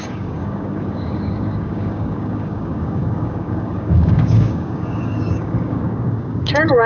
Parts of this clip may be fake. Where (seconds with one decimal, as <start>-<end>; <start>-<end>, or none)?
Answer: 0.0-6.9